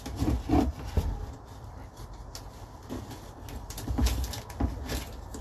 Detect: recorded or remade recorded